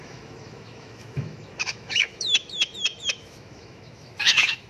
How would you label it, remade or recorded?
remade